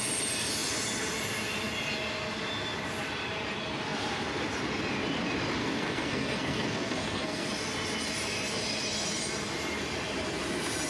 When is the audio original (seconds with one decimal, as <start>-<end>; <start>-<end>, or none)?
0.0-5.6; 7.5-10.9